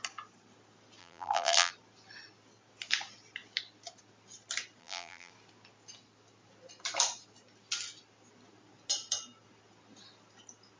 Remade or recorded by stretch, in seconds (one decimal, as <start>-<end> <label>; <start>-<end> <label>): 0.0-1.0 recorded; 1.0-1.7 remade; 1.7-4.8 recorded; 4.8-5.3 remade; 5.3-10.8 recorded